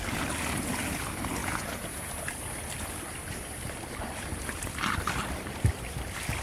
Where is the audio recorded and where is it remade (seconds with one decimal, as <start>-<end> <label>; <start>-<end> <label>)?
0.0-1.4 recorded; 1.4-2.1 remade; 2.1-6.4 recorded